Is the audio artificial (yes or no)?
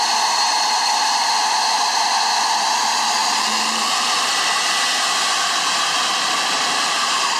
no